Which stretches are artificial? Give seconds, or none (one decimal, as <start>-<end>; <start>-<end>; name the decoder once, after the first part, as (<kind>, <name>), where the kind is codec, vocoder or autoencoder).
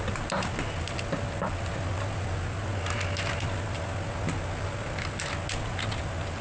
none